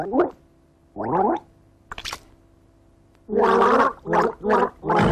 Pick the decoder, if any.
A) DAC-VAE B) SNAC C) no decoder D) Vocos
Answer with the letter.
C